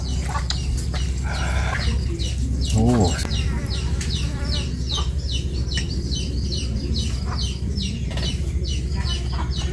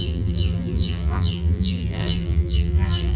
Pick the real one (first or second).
first